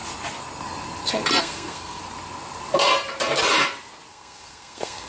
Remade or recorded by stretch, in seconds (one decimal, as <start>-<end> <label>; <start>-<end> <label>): 0.0-1.4 recorded; 1.4-2.0 remade; 2.0-4.1 recorded; 4.1-5.1 remade